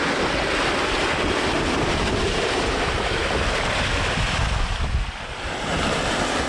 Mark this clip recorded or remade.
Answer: recorded